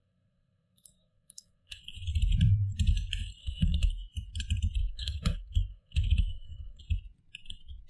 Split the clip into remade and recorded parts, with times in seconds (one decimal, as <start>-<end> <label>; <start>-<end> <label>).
0.0-1.8 remade; 1.8-3.4 recorded; 3.4-3.9 remade; 3.9-4.8 recorded; 4.8-6.8 remade; 6.8-7.9 recorded